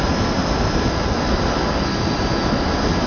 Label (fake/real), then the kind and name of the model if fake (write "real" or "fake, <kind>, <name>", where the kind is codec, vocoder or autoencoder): real